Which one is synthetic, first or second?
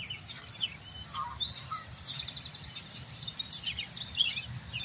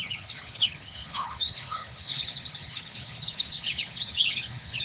second